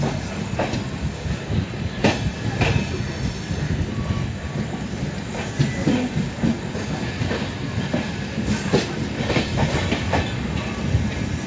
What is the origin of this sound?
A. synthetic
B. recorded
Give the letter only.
B